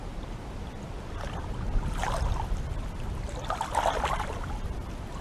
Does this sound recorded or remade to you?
recorded